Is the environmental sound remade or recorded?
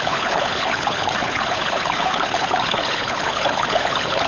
remade